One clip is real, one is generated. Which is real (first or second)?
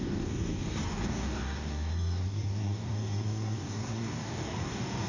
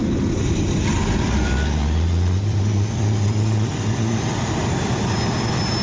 second